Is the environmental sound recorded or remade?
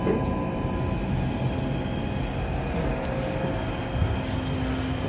recorded